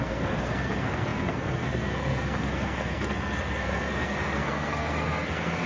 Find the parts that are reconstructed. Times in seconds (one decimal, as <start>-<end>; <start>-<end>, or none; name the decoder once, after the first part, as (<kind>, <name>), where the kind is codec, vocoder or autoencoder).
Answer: 0.0-5.7 (codec, SNAC)